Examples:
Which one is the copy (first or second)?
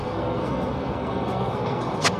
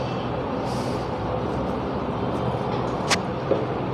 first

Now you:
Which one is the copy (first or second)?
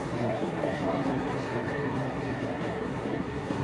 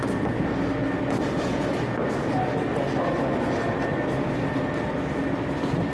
first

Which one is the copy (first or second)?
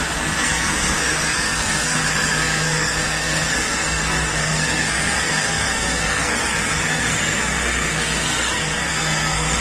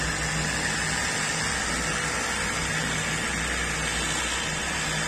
first